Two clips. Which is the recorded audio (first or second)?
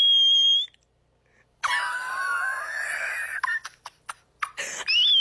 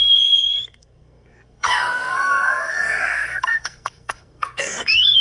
first